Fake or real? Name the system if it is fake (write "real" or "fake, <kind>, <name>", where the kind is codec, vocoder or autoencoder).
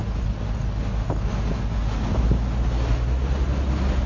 real